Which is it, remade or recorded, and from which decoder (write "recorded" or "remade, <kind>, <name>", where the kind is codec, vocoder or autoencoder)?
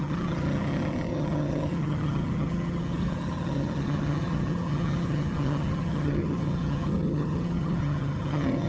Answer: remade, vocoder, HiFi-GAN